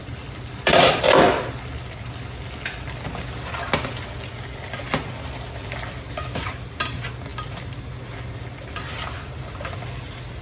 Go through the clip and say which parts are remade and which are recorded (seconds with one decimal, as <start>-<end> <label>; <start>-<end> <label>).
0.0-6.2 recorded; 6.2-6.8 remade; 6.8-10.4 recorded